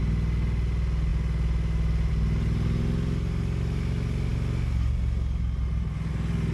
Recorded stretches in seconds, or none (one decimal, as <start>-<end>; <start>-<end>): 0.0-6.5